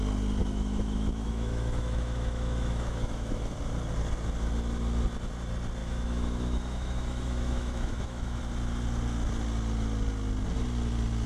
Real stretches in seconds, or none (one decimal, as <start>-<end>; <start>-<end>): 0.0-0.4; 3.5-5.8; 8.4-11.3